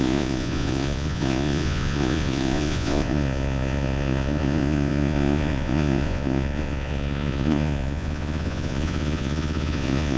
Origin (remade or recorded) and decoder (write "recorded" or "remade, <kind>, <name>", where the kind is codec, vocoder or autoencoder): remade, vocoder, Vocos